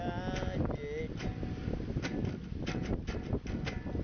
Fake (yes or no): no